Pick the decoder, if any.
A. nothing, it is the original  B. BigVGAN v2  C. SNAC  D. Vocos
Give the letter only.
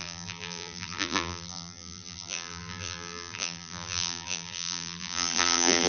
B